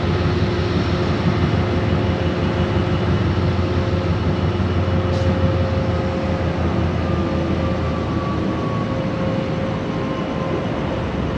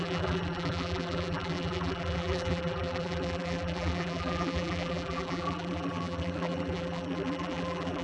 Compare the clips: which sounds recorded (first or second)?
first